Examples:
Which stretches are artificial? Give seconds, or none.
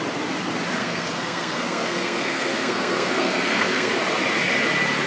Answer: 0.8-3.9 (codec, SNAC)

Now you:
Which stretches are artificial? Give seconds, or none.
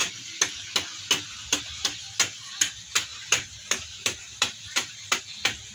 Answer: 3.1-5.2 (vocoder, BigVGAN v2)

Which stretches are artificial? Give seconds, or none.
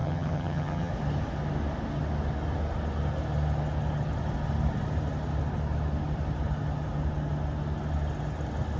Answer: 0.0-0.9 (vocoder, HiFi-GAN)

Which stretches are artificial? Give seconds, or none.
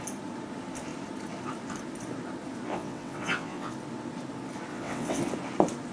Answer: 2.7-3.7 (vocoder, WaveNeXt); 4.7-5.2